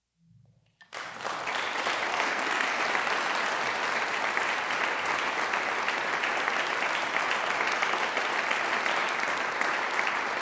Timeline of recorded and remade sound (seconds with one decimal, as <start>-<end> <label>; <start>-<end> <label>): 0.0-2.1 recorded; 2.1-2.8 remade; 2.8-10.4 recorded